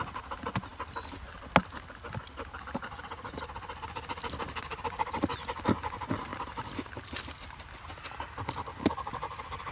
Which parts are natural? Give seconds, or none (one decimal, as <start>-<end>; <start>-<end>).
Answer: 0.0-9.7